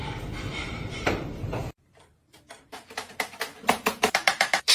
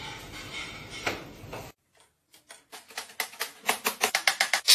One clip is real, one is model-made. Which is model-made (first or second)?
first